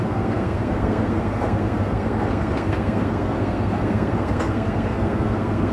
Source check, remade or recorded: remade